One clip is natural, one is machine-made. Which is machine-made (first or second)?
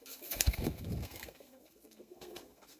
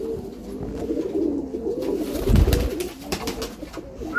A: first